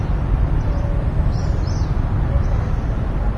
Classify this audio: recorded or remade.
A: remade